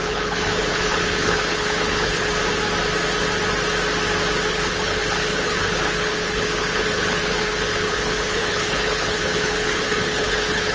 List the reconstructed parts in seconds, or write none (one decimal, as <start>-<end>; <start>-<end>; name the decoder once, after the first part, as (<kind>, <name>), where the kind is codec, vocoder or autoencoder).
0.0-2.3 (codec, HILCodec); 4.5-10.7